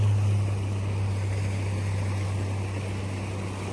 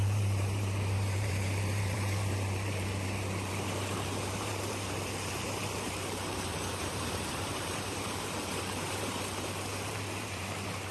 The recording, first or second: first